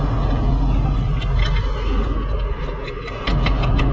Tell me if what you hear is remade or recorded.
recorded